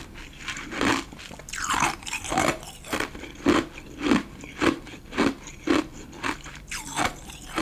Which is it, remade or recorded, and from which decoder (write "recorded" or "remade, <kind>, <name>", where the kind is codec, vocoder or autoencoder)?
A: recorded